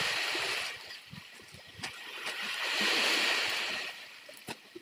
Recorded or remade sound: recorded